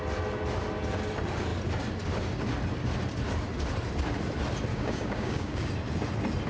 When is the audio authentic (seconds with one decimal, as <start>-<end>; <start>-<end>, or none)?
0.0-4.7; 5.7-6.5